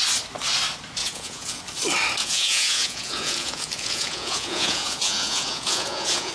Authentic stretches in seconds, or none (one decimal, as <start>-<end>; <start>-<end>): 0.0-1.0; 1.6-2.2